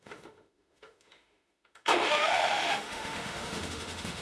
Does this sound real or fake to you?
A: fake